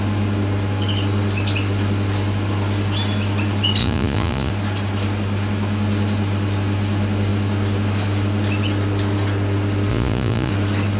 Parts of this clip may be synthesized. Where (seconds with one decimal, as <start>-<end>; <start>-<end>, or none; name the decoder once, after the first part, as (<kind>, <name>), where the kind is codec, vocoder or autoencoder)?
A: 3.8-4.5 (vocoder, Vocos); 9.9-10.5